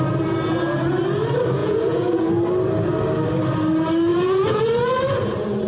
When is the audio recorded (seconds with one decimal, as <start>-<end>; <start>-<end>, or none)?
0.0-1.6; 2.3-4.1; 4.6-5.7